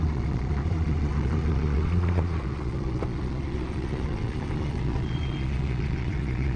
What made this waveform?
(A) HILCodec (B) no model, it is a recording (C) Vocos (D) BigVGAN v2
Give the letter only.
C